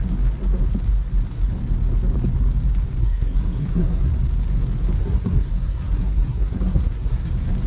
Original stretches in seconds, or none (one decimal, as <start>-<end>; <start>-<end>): 0.0-3.0; 4.1-5.0; 7.3-7.7